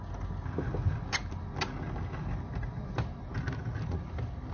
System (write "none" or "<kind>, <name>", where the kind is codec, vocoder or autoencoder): none